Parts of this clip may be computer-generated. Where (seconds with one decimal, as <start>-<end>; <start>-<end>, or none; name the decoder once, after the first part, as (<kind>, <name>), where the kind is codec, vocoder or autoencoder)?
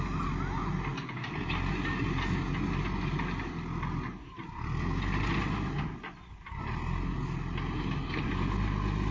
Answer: none